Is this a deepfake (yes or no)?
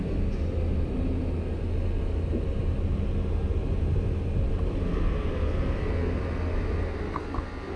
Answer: no